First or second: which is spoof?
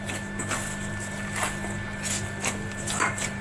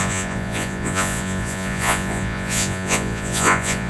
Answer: second